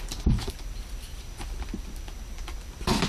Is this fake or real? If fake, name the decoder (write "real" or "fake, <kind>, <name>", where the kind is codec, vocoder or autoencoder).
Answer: fake, vocoder, BigVGAN v2